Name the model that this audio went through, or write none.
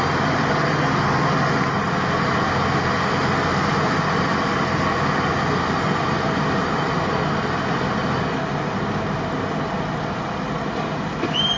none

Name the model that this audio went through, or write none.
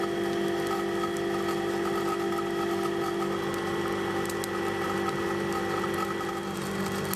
none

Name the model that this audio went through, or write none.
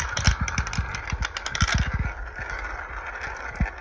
none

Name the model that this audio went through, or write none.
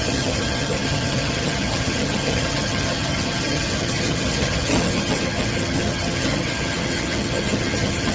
vocoder, HiFi-GAN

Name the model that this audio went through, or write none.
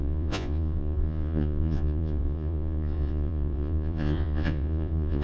vocoder, Vocos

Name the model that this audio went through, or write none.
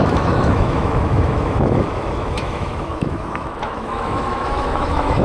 autoencoder, DAC-VAE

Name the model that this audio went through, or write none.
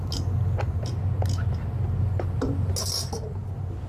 none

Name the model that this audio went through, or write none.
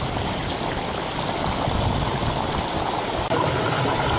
none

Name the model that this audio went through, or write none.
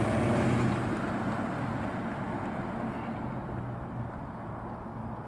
none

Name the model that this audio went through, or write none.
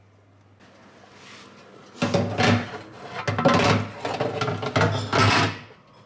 none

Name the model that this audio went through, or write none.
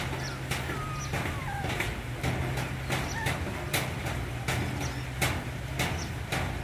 none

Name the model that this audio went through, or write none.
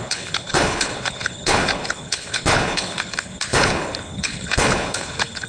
codec, HILCodec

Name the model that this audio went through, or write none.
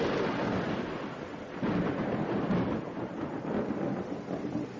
none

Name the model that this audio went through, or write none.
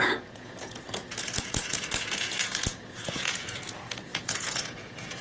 vocoder, Vocos